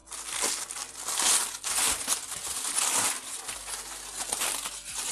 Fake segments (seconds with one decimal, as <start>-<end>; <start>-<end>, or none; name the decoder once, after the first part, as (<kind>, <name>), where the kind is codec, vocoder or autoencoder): none